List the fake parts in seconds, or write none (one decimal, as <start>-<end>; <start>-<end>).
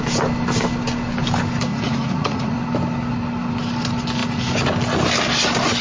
1.7-2.6